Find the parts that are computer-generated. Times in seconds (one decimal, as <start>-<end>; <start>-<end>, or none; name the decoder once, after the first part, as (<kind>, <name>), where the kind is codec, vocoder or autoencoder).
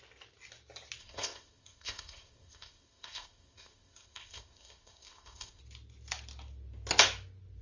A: 1.0-5.6 (codec, ZipCodec)